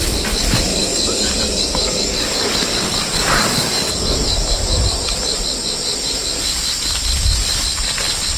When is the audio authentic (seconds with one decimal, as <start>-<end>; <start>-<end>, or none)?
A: 0.0-0.7; 4.8-8.4